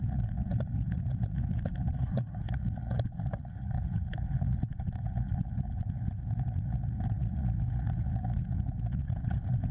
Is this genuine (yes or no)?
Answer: no